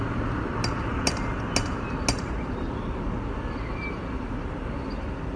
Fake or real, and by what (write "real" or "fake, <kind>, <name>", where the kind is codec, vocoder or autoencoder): real